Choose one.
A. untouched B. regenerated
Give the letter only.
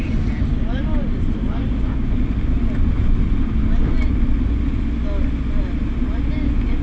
A